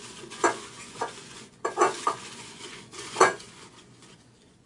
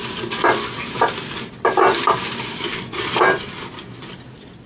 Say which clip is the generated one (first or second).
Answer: first